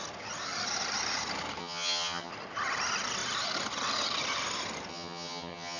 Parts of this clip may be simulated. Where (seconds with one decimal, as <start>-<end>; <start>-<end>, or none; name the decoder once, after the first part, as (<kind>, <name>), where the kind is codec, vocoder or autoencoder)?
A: 1.6-2.3 (vocoder, HiFi-GAN); 4.9-5.8